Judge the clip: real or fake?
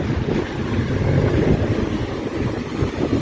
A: real